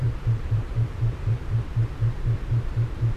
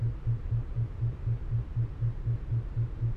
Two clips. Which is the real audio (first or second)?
second